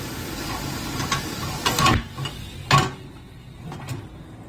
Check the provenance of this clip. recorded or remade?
recorded